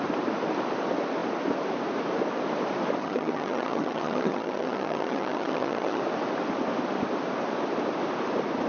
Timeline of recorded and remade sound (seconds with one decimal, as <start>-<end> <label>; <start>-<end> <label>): 0.0-3.0 recorded; 3.0-6.0 remade; 6.0-8.7 recorded